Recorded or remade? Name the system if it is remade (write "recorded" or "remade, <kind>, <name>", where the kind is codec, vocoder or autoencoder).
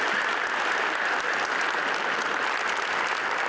recorded